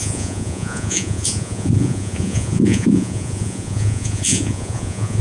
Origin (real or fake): fake